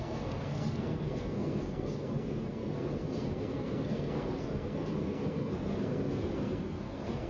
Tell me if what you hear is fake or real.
fake